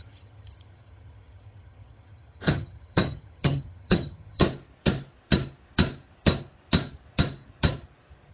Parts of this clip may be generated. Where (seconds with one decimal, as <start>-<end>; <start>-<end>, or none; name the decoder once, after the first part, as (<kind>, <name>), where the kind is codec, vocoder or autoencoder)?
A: 0.0-4.4 (vocoder, HiFi-GAN)